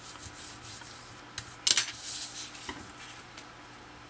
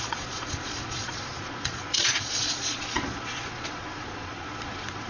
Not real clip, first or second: second